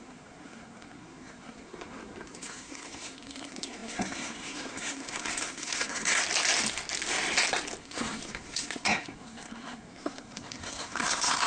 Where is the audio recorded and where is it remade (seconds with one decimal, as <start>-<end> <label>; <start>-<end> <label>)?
0.0-6.2 remade; 6.2-7.8 recorded; 7.8-11.5 remade